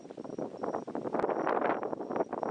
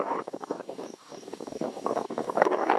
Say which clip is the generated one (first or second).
second